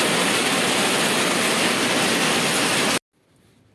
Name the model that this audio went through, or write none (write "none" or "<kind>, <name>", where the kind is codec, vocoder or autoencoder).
none